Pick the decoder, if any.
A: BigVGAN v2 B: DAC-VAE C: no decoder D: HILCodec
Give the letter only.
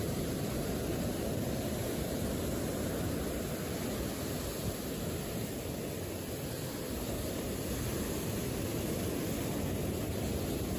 C